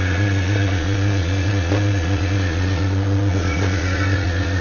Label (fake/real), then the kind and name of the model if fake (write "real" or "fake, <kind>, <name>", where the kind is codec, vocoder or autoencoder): fake, vocoder, Vocos